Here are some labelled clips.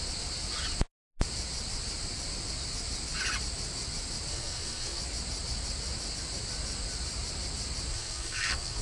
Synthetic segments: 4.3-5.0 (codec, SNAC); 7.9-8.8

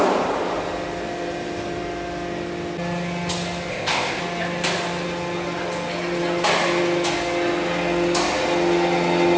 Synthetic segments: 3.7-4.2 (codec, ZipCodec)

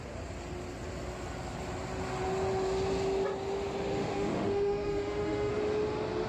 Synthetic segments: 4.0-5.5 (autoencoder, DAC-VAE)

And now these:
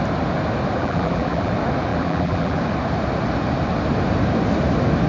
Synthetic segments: 0.8-1.5 (vocoder, BigVGAN v2); 1.9-2.6

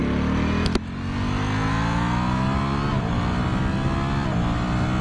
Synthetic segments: none

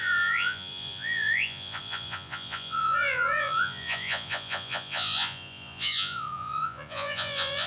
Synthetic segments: 0.0-7.7 (vocoder, Vocos)

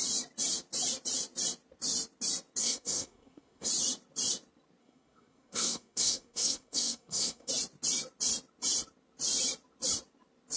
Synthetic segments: 2.6-3.7 (codec, SNAC); 4.8-7.5